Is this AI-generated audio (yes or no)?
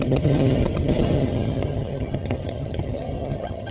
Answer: yes